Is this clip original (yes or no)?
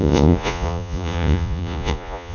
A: no